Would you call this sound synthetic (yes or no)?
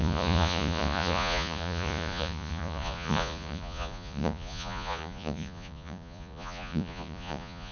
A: yes